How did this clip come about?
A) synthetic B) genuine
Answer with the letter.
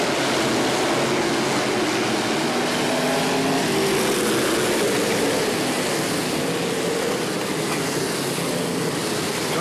B